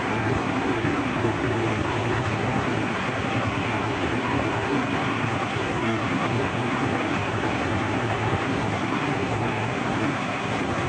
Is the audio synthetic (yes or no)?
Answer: yes